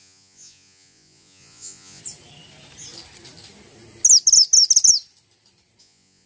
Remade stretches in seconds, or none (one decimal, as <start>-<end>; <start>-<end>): 0.0-2.0; 5.8-6.3

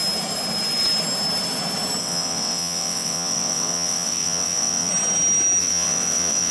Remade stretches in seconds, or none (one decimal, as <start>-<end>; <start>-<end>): 2.0-4.9; 5.6-6.5

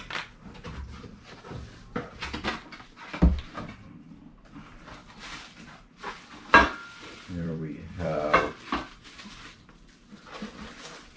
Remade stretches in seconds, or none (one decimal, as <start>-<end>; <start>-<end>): 5.0-6.3; 6.8-10.4

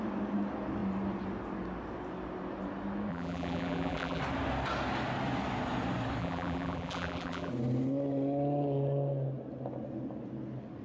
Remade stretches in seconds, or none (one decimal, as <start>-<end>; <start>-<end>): 3.1-4.2; 6.2-7.5

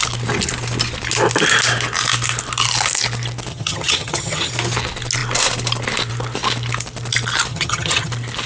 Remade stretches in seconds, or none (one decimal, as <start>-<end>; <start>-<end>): 3.5-4.5; 7.5-8.1